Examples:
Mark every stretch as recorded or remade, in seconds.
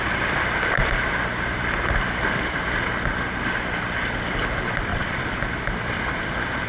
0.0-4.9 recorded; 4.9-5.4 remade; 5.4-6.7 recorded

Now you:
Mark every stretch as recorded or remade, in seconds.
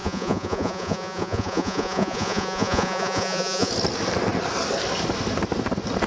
0.0-3.7 remade; 3.7-6.1 recorded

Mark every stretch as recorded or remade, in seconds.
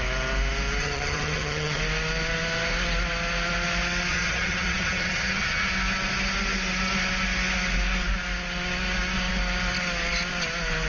0.0-0.8 recorded; 0.8-1.8 remade; 1.8-4.1 recorded; 4.1-5.7 remade; 5.7-10.9 recorded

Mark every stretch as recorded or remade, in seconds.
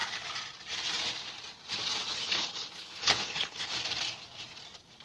0.0-2.2 recorded; 2.2-3.6 remade; 3.6-5.0 recorded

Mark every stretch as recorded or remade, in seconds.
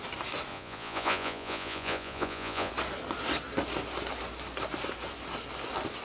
0.0-0.5 recorded; 0.5-2.7 remade; 2.7-6.0 recorded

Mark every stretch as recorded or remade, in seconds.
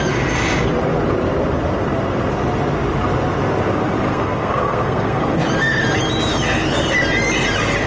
0.0-4.1 recorded; 4.1-5.2 remade; 5.2-7.9 recorded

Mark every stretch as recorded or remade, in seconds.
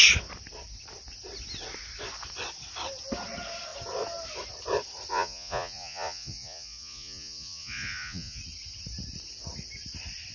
0.0-5.1 recorded; 5.1-8.4 remade; 8.4-10.3 recorded